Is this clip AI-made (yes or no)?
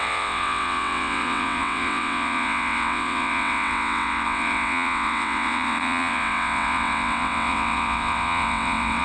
yes